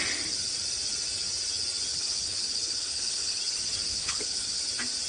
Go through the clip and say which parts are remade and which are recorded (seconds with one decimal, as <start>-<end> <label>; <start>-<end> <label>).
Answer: 0.0-1.9 recorded; 1.9-3.4 remade; 3.4-3.9 recorded; 3.9-4.6 remade; 4.6-5.1 recorded